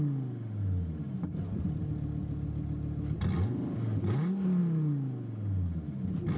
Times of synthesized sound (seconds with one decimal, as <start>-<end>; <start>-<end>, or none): none